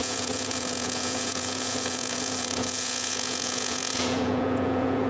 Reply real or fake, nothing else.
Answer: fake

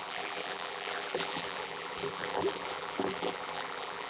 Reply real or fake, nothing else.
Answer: fake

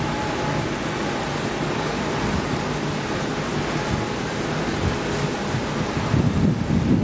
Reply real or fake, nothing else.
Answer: real